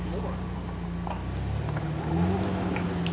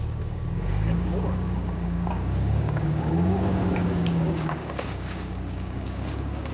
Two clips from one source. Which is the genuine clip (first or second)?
first